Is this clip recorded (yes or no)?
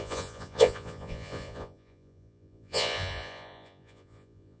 no